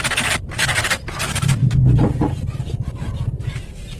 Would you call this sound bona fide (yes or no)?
yes